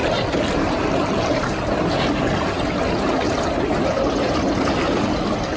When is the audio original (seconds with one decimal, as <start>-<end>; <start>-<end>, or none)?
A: 0.0-5.6

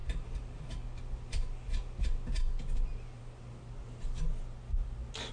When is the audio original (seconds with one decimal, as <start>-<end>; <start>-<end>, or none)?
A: 0.0-5.3

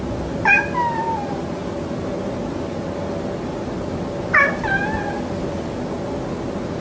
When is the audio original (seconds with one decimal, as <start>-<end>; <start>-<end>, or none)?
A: 0.0-6.8

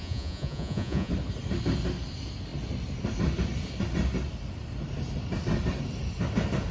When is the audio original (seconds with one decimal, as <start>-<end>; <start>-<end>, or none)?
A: 1.1-6.7